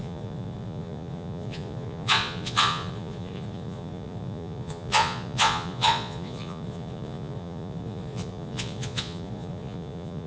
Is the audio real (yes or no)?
no